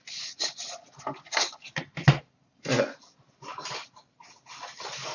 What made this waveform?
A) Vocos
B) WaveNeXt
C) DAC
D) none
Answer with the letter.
D